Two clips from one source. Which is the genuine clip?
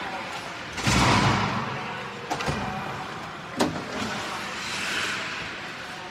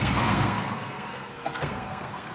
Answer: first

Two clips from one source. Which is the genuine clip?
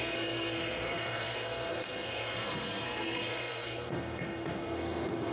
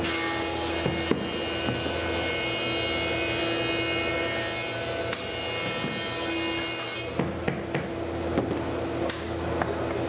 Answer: second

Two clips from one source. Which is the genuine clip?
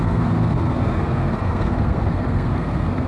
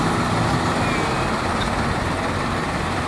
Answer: second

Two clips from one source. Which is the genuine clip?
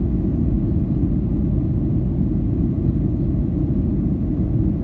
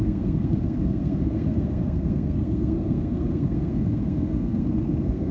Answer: first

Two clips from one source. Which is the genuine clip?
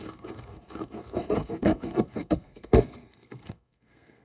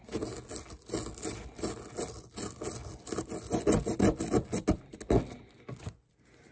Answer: second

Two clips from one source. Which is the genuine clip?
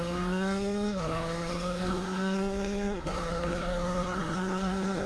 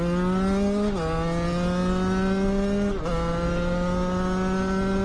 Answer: second